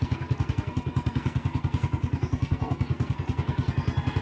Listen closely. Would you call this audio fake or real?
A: fake